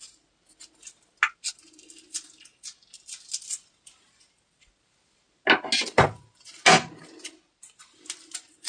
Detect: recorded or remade recorded